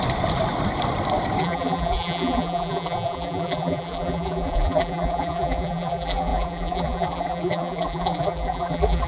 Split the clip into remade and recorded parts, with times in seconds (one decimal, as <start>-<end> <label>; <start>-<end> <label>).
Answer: 0.0-1.4 recorded; 1.4-9.1 remade